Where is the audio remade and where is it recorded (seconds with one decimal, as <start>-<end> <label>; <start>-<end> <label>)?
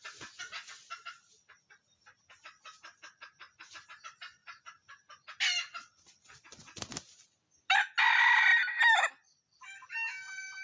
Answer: 0.0-10.6 recorded